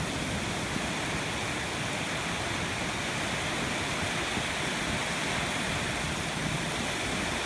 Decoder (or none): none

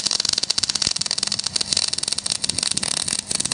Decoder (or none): none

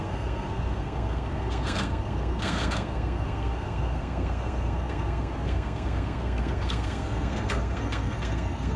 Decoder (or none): codec, SNAC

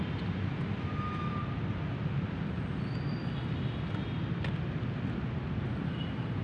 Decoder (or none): none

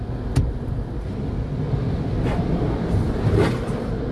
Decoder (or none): none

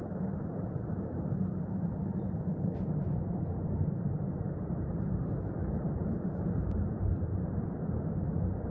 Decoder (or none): vocoder, BigVGAN v2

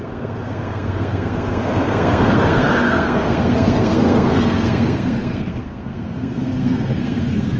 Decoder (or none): codec, SNAC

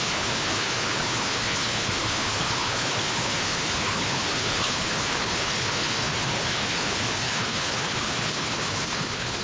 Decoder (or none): codec, HILCodec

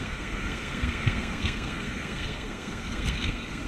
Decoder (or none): codec, SNAC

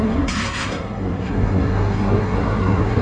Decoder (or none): codec, SNAC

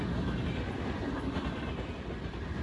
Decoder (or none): none